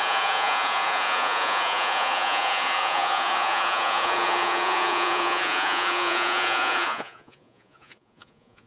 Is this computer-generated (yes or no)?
yes